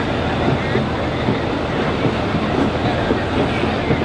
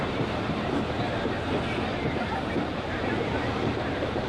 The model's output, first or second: second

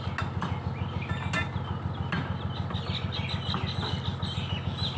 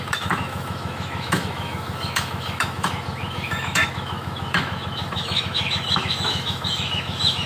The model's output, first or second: second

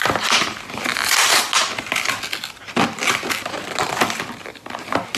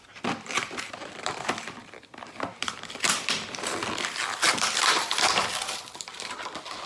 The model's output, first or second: second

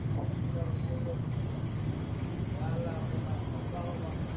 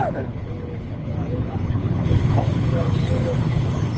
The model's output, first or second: second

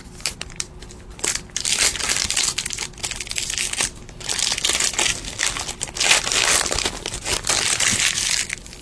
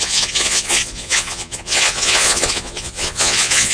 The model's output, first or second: second